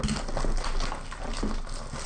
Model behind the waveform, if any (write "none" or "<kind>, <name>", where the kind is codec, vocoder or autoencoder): none